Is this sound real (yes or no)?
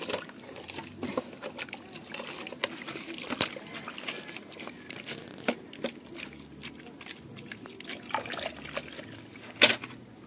yes